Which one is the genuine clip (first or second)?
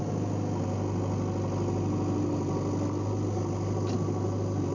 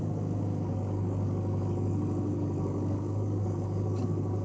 first